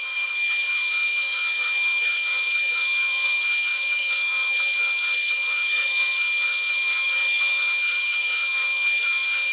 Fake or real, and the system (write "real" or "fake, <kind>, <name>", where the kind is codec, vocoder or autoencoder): fake, codec, SNAC